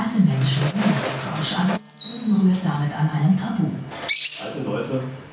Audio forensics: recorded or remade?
recorded